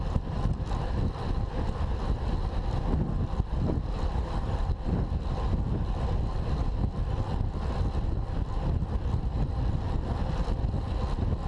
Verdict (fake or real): real